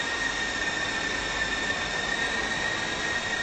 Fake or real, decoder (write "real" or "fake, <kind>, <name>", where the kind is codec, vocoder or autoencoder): real